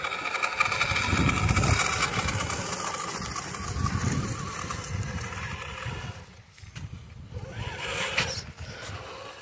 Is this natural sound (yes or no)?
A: yes